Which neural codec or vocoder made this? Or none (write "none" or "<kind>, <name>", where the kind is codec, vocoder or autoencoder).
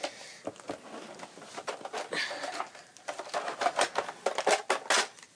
none